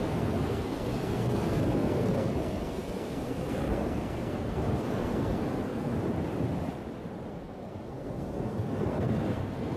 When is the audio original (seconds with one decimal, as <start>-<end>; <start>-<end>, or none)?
5.9-7.3